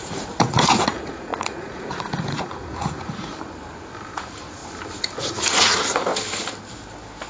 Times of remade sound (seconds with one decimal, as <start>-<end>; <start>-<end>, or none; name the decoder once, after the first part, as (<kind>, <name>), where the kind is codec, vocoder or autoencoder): 0.0-3.3 (vocoder, Vocos); 4.1-4.6; 5.2-6.1